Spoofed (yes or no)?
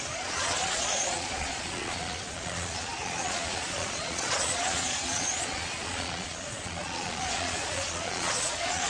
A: yes